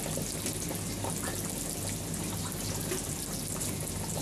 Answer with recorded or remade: recorded